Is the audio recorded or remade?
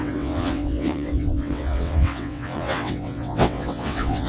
remade